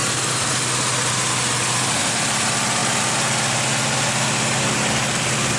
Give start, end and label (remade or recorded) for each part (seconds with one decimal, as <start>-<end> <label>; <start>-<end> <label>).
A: 0.0-5.6 recorded